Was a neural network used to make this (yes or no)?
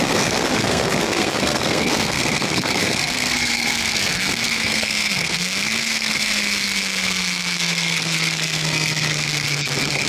yes